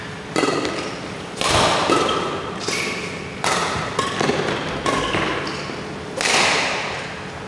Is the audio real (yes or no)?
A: yes